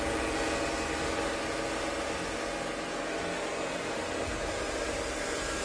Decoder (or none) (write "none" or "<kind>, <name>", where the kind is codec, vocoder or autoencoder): none